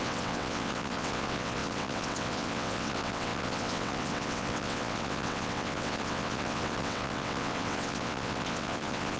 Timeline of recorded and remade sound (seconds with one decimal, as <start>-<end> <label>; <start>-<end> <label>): 0.0-9.2 remade